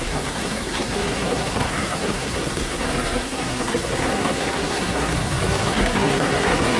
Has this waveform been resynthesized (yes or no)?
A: yes